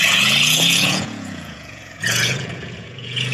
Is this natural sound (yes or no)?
no